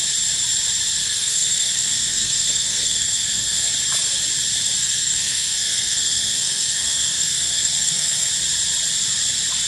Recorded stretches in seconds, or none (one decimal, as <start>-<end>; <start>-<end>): 0.0-1.0; 3.7-4.8; 8.3-9.7